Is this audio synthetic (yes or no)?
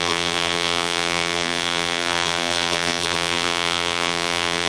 yes